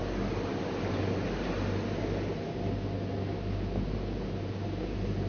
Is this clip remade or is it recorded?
recorded